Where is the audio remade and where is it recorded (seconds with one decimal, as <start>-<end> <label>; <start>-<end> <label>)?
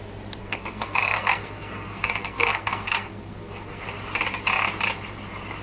0.0-0.4 recorded; 0.4-3.8 remade; 3.8-5.6 recorded